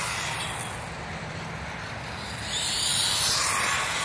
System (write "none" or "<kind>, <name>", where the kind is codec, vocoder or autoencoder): none